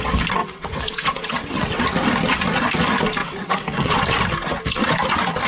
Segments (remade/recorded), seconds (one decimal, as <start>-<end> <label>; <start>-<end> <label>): 0.0-0.4 recorded; 0.4-1.8 remade; 1.8-3.2 recorded; 3.2-4.0 remade; 4.0-5.5 recorded